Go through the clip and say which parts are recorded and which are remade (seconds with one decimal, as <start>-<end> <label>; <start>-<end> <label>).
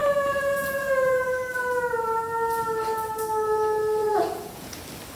0.0-1.3 remade; 1.3-4.0 recorded; 4.0-4.8 remade; 4.8-5.2 recorded